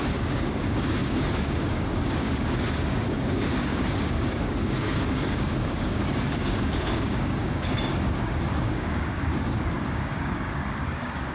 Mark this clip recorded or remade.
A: remade